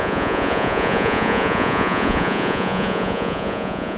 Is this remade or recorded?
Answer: remade